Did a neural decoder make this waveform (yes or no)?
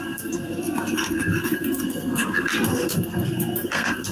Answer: yes